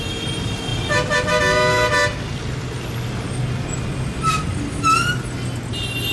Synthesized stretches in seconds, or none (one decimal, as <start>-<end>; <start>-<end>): none

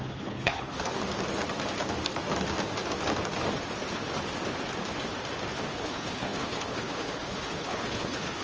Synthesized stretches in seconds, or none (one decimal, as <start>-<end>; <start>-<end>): 0.0-1.0; 5.7-8.4

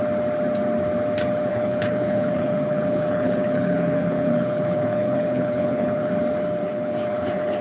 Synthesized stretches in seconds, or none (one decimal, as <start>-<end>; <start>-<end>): 1.5-6.1; 6.6-7.6

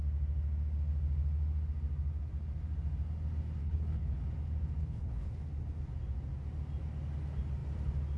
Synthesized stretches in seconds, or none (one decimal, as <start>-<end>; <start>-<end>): 3.6-4.2; 4.8-5.3

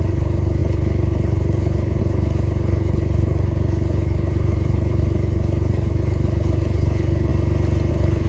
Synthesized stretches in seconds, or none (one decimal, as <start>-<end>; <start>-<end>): 0.0-7.3; 7.9-8.3

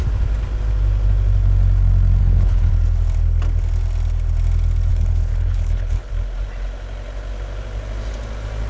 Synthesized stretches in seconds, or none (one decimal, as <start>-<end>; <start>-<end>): 2.2-2.7; 4.9-6.1

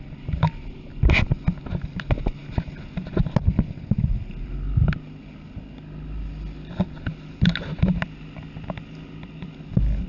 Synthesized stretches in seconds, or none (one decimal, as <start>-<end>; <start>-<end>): none